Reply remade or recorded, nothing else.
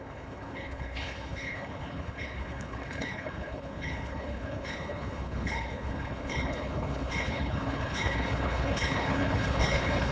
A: remade